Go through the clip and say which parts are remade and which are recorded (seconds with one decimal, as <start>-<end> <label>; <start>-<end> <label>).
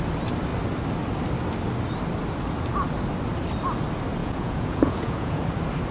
0.0-4.2 recorded; 4.2-5.4 remade; 5.4-5.9 recorded